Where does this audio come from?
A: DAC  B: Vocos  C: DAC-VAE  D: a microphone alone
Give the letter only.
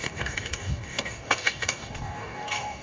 A